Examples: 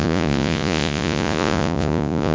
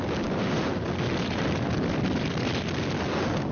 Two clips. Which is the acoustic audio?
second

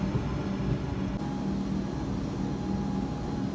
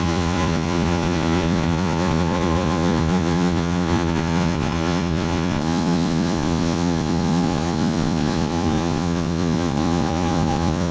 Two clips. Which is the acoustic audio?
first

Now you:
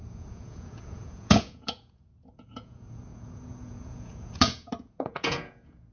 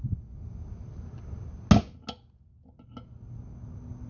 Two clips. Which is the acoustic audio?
second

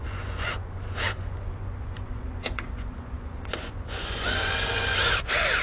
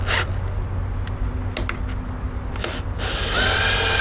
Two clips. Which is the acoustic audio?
second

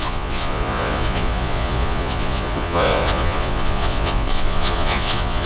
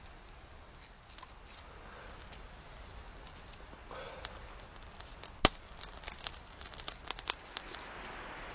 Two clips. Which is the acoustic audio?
second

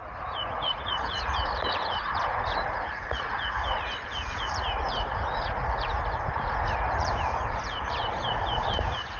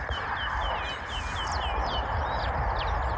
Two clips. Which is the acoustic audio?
second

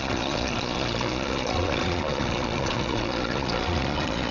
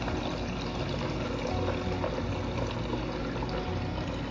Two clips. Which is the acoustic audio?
second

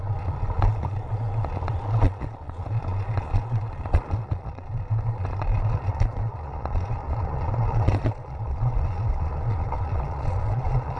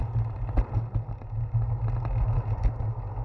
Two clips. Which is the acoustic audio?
second